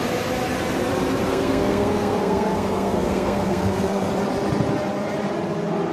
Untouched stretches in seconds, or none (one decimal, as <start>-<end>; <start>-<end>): 0.0-1.3; 4.1-5.9